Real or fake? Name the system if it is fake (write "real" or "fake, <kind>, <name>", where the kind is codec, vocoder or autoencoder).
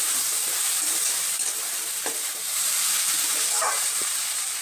fake, vocoder, BigVGAN v2